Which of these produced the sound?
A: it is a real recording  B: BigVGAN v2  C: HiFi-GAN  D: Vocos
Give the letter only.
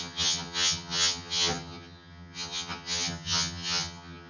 C